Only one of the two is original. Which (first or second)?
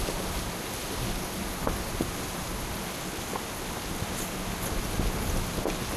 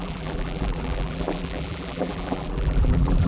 first